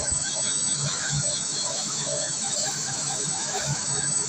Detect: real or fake fake